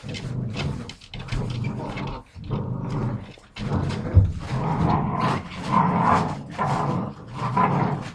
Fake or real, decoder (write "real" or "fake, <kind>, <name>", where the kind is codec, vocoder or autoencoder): real